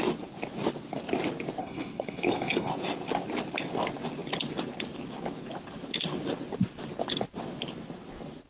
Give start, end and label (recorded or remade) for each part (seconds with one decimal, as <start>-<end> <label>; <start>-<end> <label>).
0.0-1.6 recorded; 1.6-2.7 remade; 2.7-8.5 recorded